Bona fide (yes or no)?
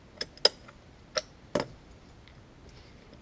yes